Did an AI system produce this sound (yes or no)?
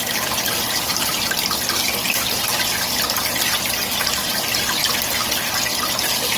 no